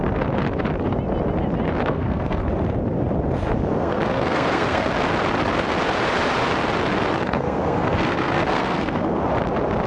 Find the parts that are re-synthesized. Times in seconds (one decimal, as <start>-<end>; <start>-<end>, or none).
1.8-2.5; 3.8-4.9; 7.1-9.2